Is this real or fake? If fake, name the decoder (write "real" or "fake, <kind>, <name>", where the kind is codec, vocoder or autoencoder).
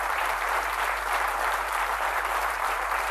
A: fake, vocoder, BigVGAN v2